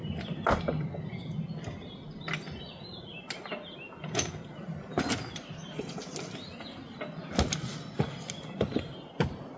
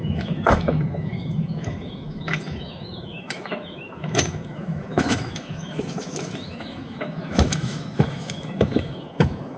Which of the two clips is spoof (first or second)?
second